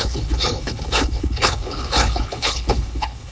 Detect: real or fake fake